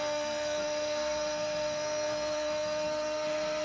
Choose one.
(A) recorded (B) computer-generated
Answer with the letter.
B